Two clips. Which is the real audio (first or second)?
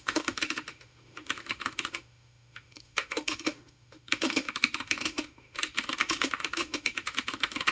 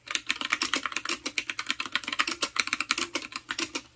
second